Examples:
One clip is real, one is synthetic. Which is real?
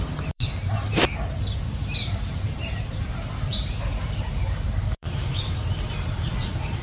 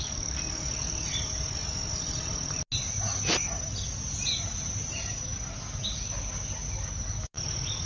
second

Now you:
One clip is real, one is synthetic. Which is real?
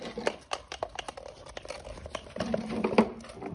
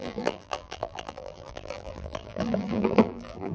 first